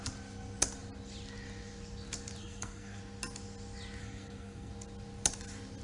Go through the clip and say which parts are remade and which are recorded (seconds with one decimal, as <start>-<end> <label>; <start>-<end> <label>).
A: 0.0-2.4 recorded; 2.4-3.0 remade; 3.0-4.0 recorded; 4.0-4.7 remade; 4.7-5.8 recorded